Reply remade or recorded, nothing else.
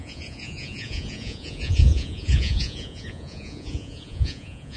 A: remade